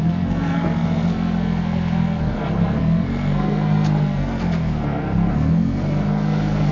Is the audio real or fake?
fake